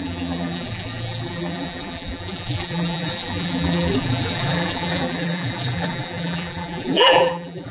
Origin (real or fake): fake